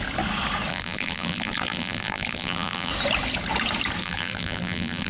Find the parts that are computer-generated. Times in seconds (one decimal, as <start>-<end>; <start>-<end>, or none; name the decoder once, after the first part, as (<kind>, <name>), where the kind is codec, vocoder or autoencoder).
0.7-2.9 (vocoder, BigVGAN v2); 4.0-5.1